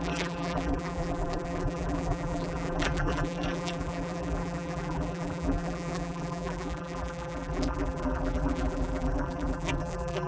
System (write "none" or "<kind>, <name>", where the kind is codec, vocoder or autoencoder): vocoder, BigVGAN v2